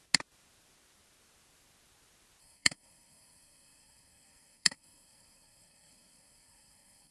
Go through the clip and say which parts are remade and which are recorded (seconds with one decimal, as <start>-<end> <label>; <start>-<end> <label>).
0.0-2.4 recorded; 2.4-7.1 remade

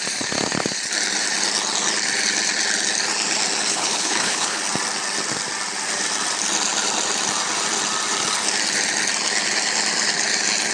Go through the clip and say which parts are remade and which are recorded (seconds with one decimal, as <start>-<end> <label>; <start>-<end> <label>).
0.0-3.7 recorded; 3.7-4.6 remade; 4.6-10.7 recorded

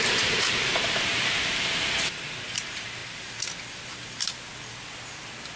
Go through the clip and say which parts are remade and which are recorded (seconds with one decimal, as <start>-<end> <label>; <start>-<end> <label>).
0.0-3.0 remade; 3.0-5.6 recorded

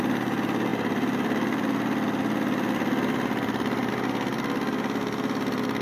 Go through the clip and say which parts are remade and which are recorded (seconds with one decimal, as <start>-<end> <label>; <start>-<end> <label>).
0.0-0.7 recorded; 0.7-3.9 remade; 3.9-5.8 recorded

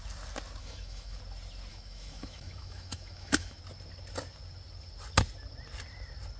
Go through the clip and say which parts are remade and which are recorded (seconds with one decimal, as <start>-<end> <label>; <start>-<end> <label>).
0.0-0.6 recorded; 0.6-1.2 remade; 1.2-1.7 recorded; 1.7-3.6 remade; 3.6-6.4 recorded